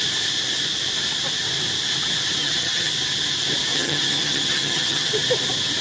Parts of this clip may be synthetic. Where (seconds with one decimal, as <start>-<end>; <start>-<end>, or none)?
2.4-2.9; 3.7-5.1